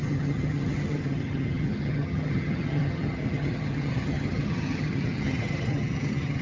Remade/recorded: remade